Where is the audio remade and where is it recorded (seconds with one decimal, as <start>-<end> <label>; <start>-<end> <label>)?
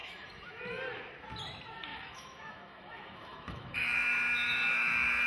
0.0-0.6 remade; 0.6-1.9 recorded; 1.9-5.3 remade